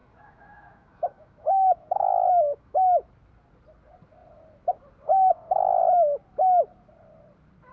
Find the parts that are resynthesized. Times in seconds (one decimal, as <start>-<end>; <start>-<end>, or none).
0.0-3.1